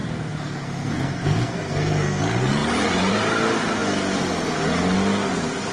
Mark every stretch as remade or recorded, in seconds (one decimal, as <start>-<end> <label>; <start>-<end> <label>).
0.0-2.2 remade; 2.2-5.7 recorded